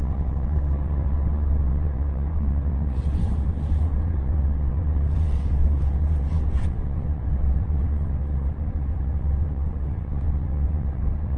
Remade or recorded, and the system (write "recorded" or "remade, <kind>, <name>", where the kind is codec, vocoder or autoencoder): remade, vocoder, WaveNeXt